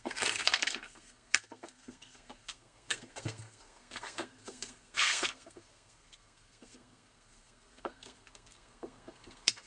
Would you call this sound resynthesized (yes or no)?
yes